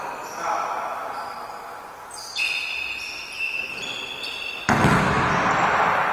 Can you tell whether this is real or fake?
real